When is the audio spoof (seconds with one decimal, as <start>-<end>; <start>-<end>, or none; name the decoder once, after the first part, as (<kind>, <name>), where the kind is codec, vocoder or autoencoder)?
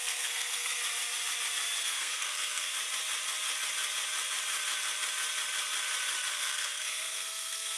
0.0-0.8 (codec, SNAC); 1.8-2.7; 6.3-7.8